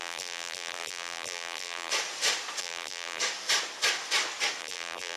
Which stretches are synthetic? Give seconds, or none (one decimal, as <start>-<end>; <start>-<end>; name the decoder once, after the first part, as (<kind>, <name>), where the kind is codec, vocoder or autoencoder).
0.0-1.9 (vocoder, BigVGAN v2); 2.6-3.2; 4.6-5.2